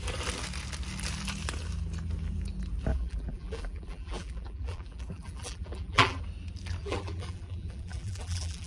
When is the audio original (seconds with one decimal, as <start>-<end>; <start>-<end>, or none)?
0.0-2.9; 6.2-6.8